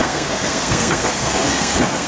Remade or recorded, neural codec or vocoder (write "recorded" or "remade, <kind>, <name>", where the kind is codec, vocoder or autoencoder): remade, codec, SNAC